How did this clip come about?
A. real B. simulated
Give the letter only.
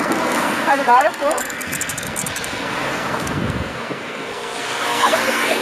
B